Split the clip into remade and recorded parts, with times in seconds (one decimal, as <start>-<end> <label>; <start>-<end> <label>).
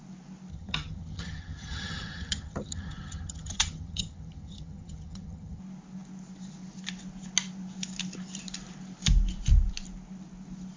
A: 0.0-0.5 recorded; 0.5-5.6 remade; 5.6-10.8 recorded